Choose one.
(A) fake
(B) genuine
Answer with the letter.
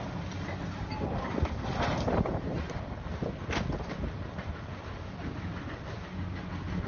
B